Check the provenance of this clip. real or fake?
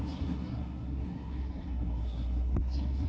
fake